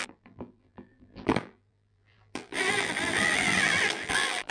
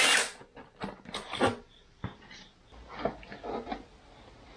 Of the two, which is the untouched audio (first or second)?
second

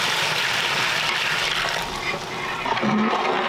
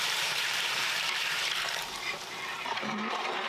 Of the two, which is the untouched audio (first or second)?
first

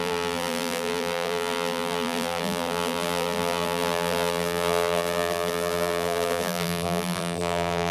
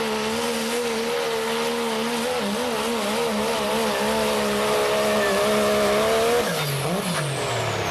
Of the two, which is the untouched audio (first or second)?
second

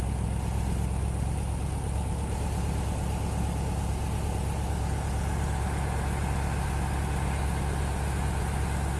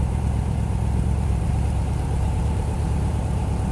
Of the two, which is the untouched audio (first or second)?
first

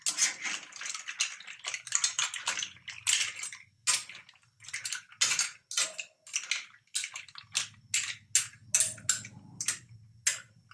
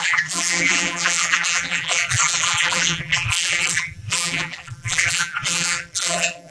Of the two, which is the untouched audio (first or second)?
first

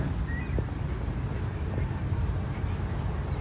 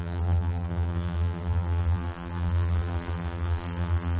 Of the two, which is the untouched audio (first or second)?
first